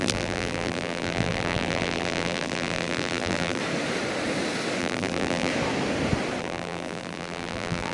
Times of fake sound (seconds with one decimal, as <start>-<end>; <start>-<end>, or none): 0.0-3.6; 4.8-5.5; 6.4-7.9